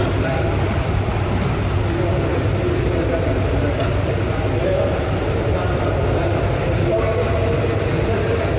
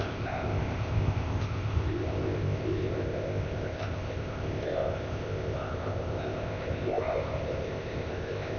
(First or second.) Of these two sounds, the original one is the first